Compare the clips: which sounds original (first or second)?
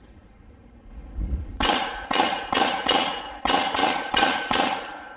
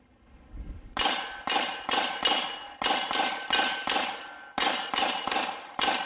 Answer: second